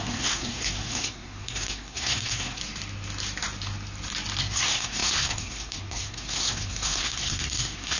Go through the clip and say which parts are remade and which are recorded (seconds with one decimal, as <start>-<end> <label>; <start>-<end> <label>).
0.0-2.6 remade; 2.6-4.4 recorded; 4.4-8.0 remade